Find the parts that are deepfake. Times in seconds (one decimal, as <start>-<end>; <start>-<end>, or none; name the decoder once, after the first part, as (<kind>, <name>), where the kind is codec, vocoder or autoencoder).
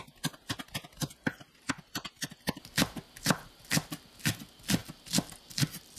1.0-4.3 (vocoder, BigVGAN v2); 4.8-5.5